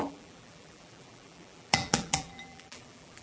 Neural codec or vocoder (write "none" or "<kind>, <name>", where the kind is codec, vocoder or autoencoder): vocoder, BigVGAN v2